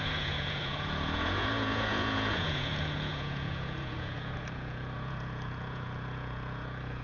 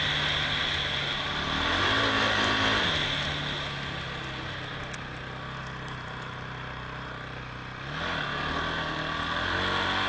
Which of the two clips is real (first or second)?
second